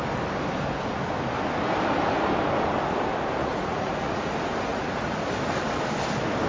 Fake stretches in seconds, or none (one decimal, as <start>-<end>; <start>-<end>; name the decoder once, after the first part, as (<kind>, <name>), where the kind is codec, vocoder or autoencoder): 3.4-4.3 (vocoder, Vocos); 4.7-5.2